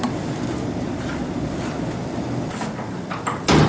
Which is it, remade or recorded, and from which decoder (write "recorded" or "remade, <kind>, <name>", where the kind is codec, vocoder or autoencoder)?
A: recorded